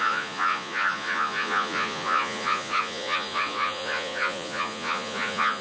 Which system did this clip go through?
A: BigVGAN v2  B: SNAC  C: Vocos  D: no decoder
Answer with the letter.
C